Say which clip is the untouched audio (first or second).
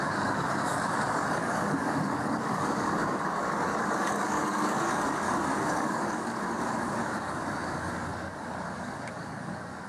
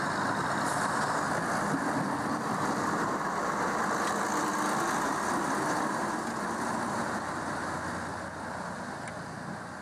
second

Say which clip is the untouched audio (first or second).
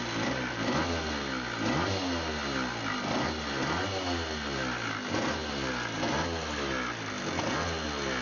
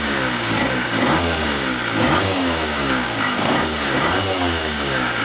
first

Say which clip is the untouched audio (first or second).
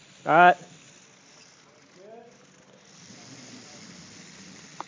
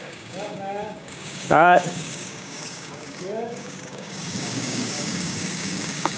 first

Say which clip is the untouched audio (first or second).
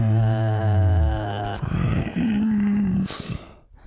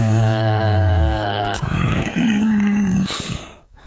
first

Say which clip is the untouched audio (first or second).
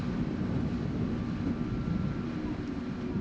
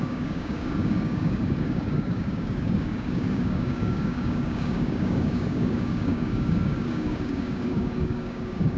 first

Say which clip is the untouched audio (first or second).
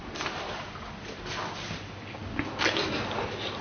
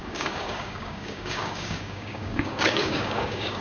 first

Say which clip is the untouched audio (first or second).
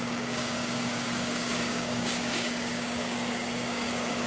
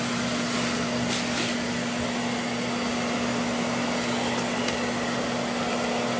second